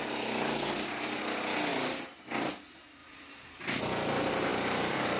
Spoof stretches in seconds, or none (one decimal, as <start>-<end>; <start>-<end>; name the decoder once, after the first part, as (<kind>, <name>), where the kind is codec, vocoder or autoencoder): 1.7-2.5 (vocoder, BigVGAN v2); 3.0-3.8; 4.5-5.2